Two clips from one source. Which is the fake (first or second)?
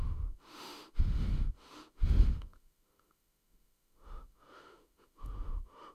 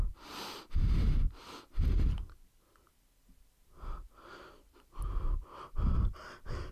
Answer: first